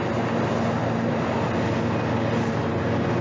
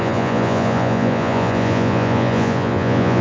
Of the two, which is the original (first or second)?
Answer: first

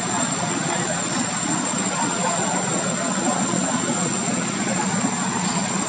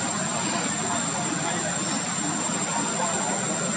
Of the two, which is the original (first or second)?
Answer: second